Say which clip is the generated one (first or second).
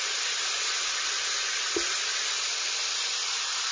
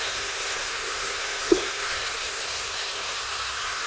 second